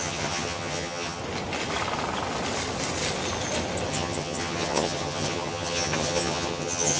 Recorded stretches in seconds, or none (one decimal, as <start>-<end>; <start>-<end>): 1.2-3.9